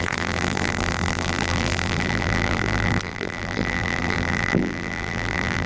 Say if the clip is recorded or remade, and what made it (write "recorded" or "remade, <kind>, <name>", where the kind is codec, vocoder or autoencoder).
remade, vocoder, BigVGAN v2